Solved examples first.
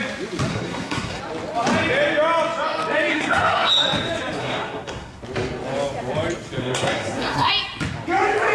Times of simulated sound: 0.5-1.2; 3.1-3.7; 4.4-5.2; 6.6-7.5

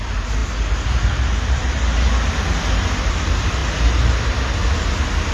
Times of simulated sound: none

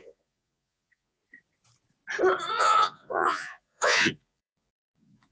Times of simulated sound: 0.0-1.2; 2.5-5.3

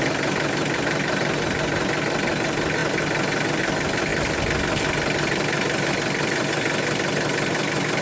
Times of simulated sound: none